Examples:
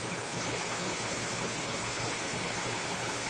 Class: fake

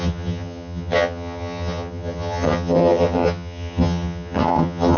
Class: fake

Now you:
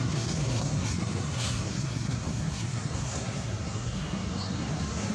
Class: fake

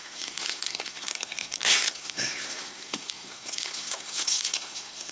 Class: fake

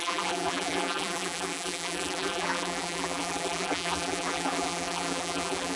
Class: fake